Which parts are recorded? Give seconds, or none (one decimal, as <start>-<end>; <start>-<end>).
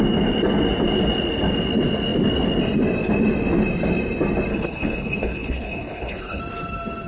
0.0-4.5; 6.4-7.1